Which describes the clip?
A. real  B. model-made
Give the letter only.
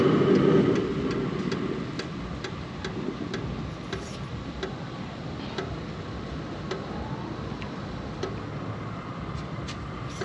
A